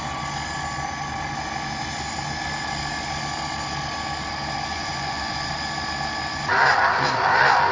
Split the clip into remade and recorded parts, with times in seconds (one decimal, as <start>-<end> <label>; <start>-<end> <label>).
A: 0.0-4.7 recorded; 4.7-5.5 remade; 5.5-7.7 recorded